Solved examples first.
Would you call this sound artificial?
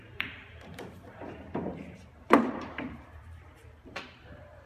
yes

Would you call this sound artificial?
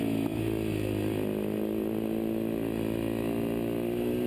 no